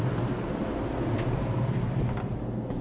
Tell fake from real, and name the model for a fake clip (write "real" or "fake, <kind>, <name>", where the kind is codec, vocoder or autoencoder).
real